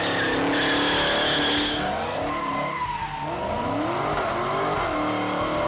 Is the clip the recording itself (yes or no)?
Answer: yes